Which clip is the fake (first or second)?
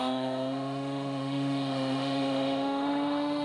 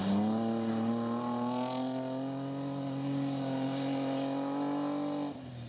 first